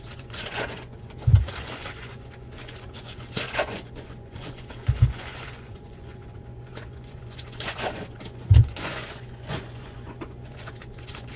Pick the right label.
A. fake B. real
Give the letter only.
A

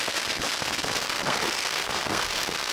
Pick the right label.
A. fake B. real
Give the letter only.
A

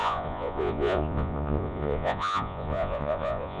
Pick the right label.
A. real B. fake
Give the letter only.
B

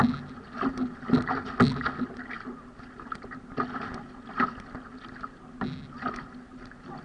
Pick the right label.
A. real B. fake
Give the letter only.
A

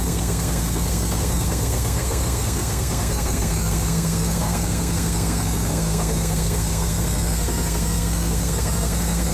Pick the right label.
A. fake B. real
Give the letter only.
A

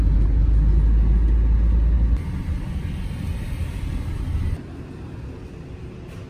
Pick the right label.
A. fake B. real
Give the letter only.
B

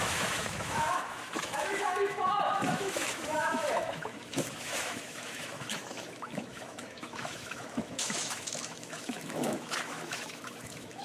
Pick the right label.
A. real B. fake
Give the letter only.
B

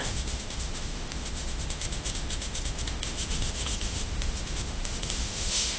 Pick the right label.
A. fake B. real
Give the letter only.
A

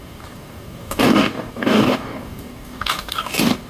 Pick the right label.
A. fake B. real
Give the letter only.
A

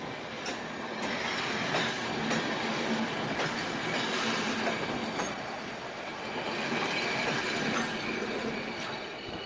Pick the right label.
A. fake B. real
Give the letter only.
B